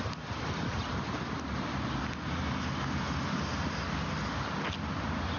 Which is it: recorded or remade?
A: recorded